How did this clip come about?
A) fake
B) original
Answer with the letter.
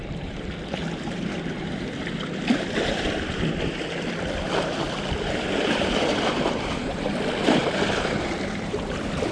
A